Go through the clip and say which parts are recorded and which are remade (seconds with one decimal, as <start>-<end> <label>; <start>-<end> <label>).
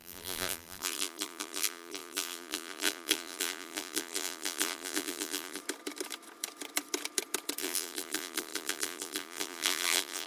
0.0-5.6 remade; 5.6-7.6 recorded; 7.6-10.3 remade